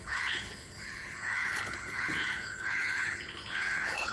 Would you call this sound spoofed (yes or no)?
yes